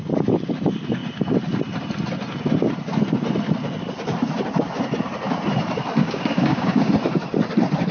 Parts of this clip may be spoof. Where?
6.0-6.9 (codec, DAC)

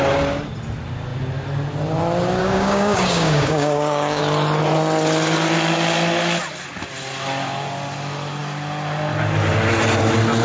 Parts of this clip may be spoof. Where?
2.4-4.2 (codec, DAC)